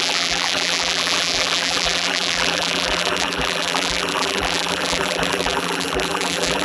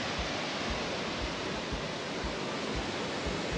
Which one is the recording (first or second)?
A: second